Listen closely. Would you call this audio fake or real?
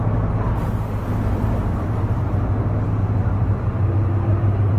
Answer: real